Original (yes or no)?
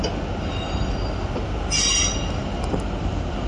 yes